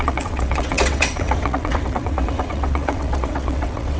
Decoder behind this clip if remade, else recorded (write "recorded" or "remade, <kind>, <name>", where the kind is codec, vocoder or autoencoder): remade, vocoder, WaveNeXt